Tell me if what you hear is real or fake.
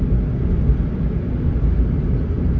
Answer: real